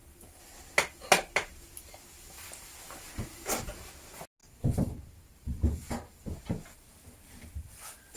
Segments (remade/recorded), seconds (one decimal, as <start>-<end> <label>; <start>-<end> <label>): 0.0-8.2 recorded